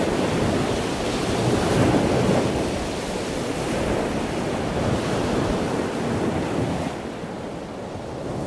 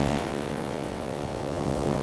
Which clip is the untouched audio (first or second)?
first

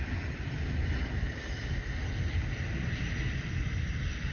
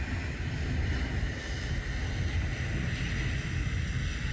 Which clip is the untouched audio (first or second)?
second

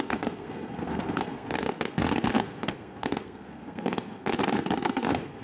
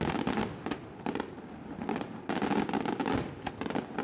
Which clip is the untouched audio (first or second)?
second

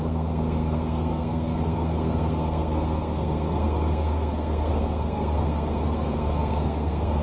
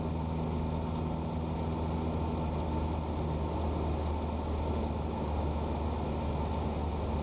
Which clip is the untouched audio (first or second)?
second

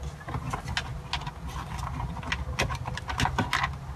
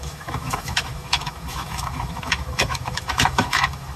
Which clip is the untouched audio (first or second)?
first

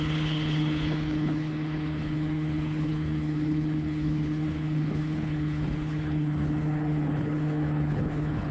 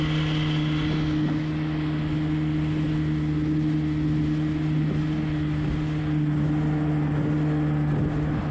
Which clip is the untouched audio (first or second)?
second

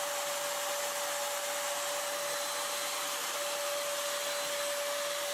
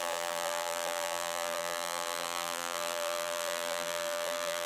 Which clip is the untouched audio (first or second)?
first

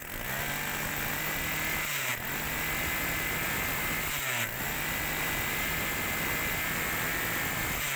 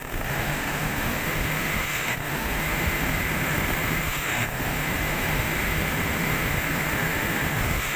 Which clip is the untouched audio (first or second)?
first